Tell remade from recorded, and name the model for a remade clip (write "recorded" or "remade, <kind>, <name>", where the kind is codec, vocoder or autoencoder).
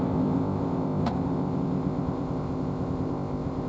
remade, codec, ZipCodec